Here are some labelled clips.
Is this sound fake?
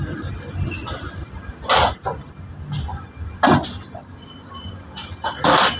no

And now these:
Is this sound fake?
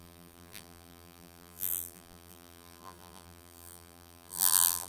yes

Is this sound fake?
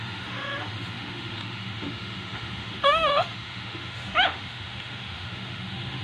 yes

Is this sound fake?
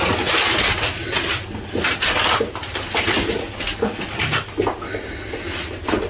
no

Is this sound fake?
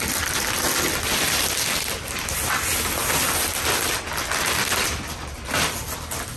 no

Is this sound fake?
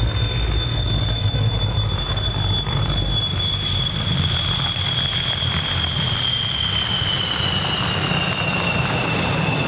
no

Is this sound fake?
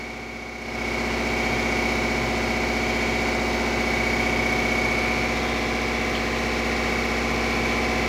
no